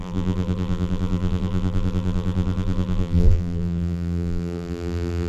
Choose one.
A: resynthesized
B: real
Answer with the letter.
A